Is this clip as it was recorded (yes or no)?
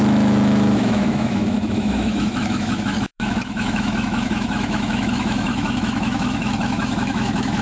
no